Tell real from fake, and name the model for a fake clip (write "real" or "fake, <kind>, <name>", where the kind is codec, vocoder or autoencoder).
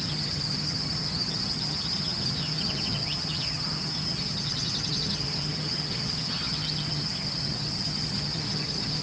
fake, vocoder, HiFi-GAN